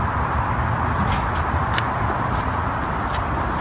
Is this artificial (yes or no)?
no